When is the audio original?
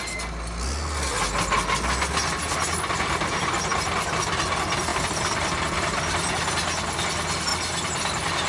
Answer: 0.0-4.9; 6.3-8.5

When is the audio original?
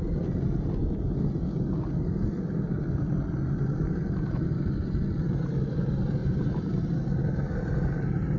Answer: 0.0-6.2; 6.7-8.4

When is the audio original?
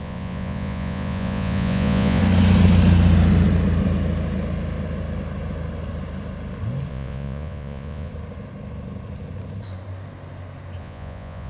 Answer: 2.2-6.9; 8.1-10.8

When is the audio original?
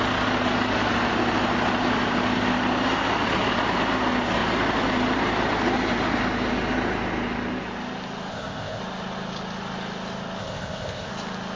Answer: 0.0-8.3; 8.8-10.4; 11.1-11.6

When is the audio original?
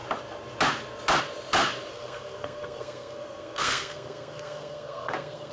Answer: 0.0-1.9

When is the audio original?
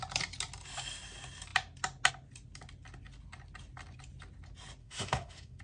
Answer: 0.0-4.8